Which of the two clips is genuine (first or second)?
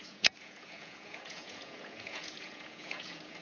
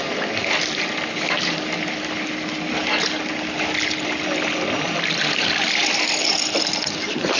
second